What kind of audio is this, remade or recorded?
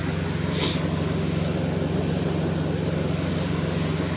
recorded